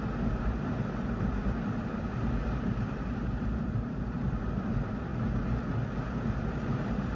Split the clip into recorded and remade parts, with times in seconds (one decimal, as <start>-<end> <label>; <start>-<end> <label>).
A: 0.0-5.1 remade; 5.1-6.4 recorded; 6.4-7.2 remade